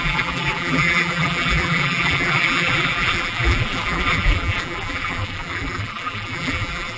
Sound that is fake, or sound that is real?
fake